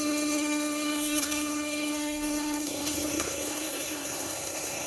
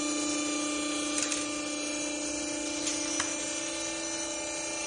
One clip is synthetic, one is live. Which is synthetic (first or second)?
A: first